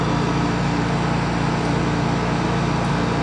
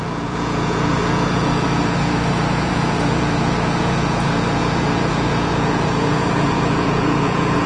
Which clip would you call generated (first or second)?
second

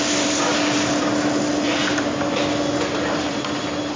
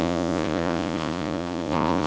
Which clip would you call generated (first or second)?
second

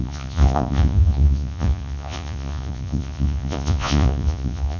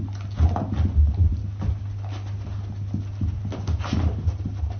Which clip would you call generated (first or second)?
first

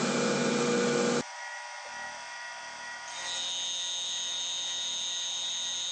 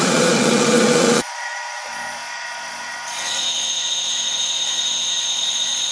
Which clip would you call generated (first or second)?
second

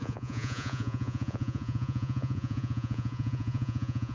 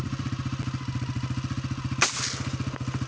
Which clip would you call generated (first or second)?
first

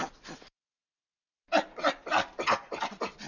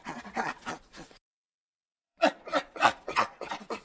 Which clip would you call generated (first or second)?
second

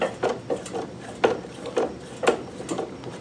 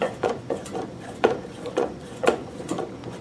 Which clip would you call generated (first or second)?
second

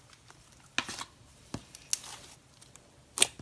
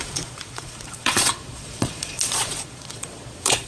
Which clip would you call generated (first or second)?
second